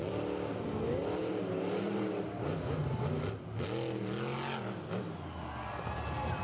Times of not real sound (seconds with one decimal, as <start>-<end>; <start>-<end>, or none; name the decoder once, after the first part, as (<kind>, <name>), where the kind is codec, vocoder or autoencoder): none